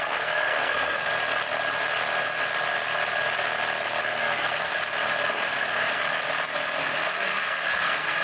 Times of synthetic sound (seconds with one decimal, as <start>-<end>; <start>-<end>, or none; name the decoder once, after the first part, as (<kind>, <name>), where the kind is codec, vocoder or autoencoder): 0.0-1.1 (codec, SNAC); 4.0-4.7; 5.3-6.1; 6.8-8.2